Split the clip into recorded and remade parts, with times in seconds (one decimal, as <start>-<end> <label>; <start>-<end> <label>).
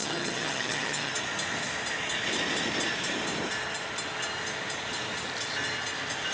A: 0.0-1.1 remade; 1.1-6.3 recorded